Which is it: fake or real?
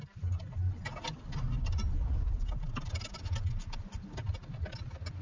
real